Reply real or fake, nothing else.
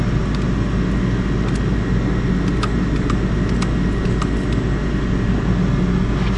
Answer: real